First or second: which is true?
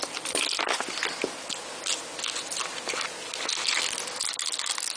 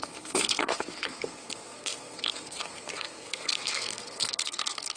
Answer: first